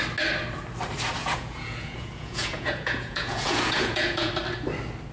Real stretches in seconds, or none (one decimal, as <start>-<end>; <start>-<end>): 0.0-1.2; 4.3-5.1